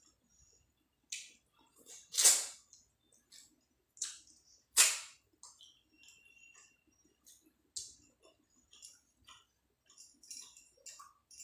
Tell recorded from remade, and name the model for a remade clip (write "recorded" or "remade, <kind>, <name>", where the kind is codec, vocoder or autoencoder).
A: recorded